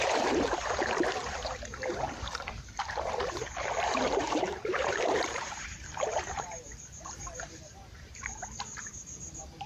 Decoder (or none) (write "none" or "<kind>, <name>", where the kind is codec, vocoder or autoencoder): vocoder, BigVGAN v2